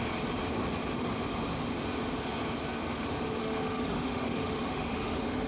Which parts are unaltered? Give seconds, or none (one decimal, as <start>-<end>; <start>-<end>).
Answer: 0.0-3.4

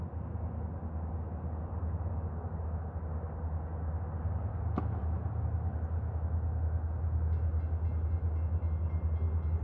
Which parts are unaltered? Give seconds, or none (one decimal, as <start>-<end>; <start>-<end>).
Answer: 0.0-9.6